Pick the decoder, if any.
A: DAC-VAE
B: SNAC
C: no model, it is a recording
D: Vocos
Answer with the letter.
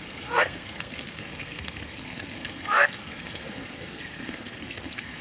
B